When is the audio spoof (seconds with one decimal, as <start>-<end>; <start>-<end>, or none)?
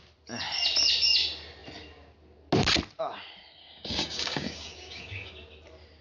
3.6-5.3